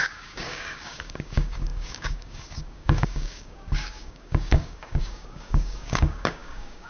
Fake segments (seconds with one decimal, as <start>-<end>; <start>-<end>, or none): 0.0-6.9